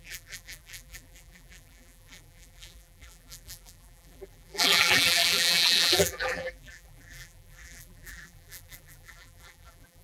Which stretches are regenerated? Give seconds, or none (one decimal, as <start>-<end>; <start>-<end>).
0.0-10.0